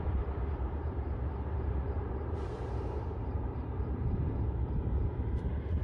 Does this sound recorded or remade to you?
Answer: remade